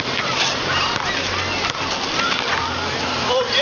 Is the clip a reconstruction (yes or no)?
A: no